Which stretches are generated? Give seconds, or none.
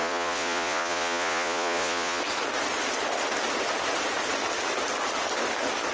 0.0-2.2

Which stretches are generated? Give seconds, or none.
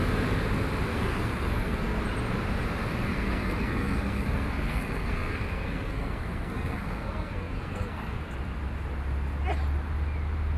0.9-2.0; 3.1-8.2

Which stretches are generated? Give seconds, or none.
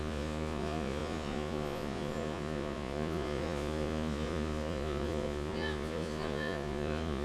0.0-7.2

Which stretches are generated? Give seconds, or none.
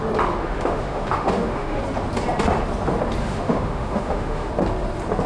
0.4-1.8; 3.2-4.5